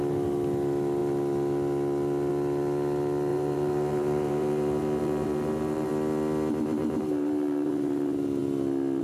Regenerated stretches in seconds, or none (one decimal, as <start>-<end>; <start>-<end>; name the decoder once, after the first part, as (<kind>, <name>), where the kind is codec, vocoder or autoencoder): 3.3-5.9 (vocoder, BigVGAN v2); 6.8-7.7